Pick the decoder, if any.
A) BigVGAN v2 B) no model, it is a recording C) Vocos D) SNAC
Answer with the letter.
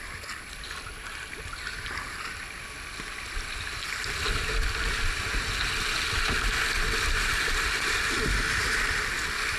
B